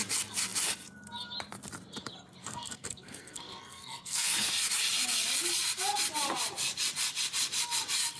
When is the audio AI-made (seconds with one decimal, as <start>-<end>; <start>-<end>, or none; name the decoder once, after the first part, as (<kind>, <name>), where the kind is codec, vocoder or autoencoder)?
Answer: 2.4-4.5 (codec, SNAC)